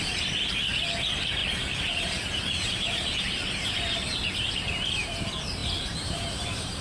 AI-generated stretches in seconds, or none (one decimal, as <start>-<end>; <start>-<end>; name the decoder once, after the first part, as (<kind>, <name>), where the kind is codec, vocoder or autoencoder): 1.4-3.2 (vocoder, BigVGAN v2); 5.6-6.8